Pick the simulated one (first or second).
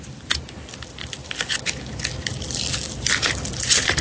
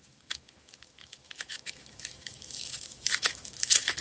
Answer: second